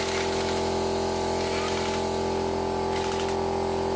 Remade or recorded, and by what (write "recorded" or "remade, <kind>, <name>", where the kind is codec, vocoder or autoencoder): recorded